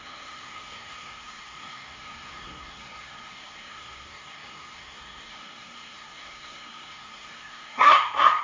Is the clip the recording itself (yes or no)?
no